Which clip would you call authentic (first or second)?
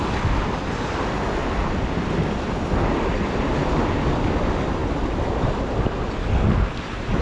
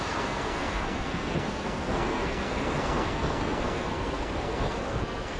first